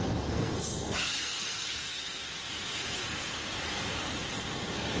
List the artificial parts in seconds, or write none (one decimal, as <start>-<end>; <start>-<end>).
0.0-5.0